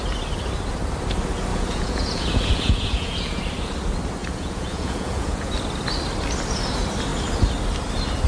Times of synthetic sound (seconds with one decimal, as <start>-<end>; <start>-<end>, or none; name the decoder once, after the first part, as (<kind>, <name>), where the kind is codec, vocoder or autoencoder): 1.5-3.4 (vocoder, Vocos); 4.2-5.5